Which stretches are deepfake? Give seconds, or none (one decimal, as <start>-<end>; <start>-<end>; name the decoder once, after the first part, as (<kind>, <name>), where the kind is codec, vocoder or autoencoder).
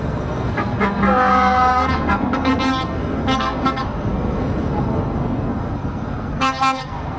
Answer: 0.0-7.2 (codec, SNAC)